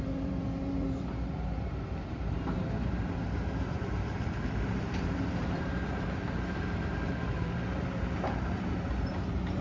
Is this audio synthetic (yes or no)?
yes